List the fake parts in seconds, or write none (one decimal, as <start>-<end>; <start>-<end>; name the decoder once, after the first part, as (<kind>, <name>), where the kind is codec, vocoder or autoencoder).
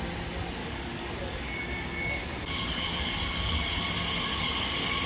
0.6-3.7 (codec, DAC); 4.3-5.1